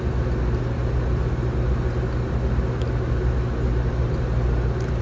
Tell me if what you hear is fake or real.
real